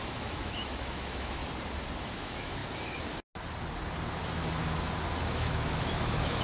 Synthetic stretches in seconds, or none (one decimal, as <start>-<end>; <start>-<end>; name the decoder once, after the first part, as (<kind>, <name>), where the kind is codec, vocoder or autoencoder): 0.0-1.4 (autoencoder, DAC-VAE); 2.0-2.6; 5.2-6.4